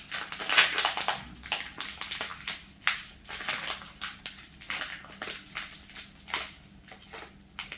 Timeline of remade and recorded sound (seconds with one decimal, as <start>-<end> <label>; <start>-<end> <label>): 0.0-7.8 recorded